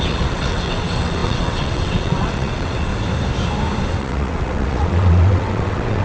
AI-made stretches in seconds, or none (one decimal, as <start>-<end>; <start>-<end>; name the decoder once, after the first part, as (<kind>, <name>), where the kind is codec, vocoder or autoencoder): 0.0-2.9 (vocoder, WaveNeXt); 3.9-6.0